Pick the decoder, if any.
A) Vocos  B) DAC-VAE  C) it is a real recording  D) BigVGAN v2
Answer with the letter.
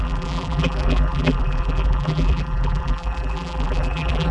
D